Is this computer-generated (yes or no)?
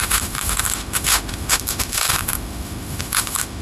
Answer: yes